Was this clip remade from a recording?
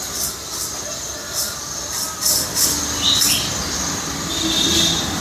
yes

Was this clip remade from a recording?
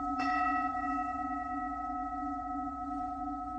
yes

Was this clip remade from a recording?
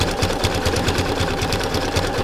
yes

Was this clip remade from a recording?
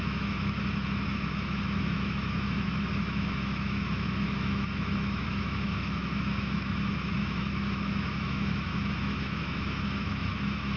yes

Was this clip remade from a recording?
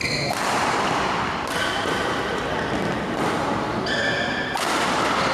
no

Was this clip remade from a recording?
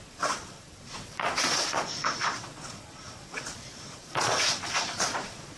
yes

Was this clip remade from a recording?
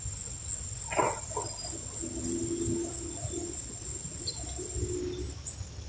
no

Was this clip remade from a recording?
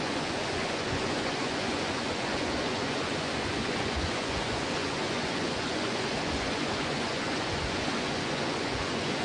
yes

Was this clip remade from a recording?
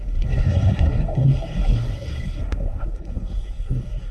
yes